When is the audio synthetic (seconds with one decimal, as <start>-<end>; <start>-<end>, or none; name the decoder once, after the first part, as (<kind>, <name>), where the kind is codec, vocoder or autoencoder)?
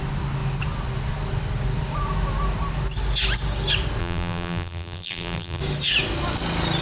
4.0-5.6 (vocoder, BigVGAN v2)